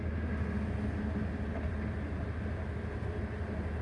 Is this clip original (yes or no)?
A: yes